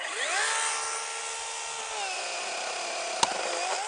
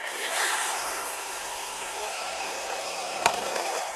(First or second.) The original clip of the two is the first